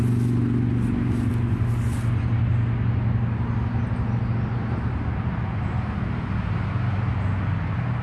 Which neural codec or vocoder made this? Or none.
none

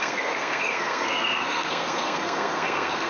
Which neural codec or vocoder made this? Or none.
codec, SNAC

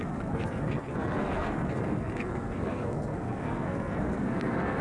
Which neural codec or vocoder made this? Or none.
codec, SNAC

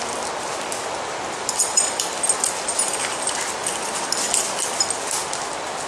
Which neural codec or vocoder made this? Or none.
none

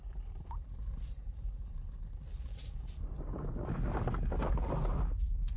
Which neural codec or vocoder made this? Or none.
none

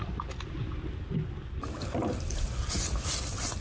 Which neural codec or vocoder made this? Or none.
none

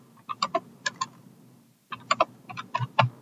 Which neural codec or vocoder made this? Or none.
none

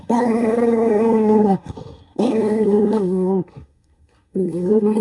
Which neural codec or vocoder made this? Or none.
codec, SNAC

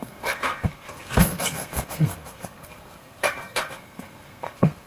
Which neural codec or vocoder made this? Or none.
codec, SNAC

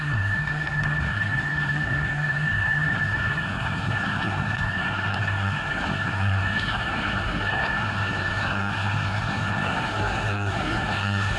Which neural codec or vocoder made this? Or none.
codec, SNAC